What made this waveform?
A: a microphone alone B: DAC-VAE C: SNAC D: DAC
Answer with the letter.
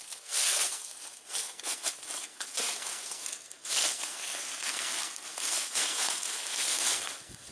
C